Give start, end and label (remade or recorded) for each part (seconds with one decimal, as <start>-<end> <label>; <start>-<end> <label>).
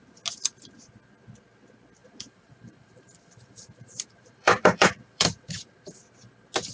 0.0-2.0 recorded; 2.0-6.0 remade; 6.0-6.7 recorded